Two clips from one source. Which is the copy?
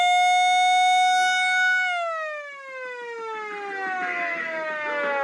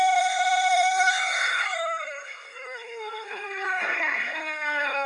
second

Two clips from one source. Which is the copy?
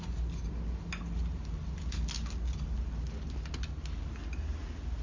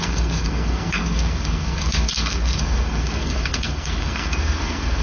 second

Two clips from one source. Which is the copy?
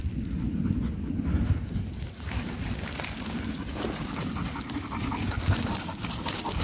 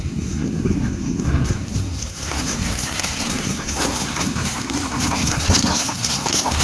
second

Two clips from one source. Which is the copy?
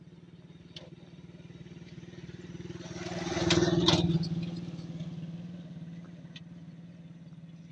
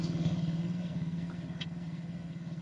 second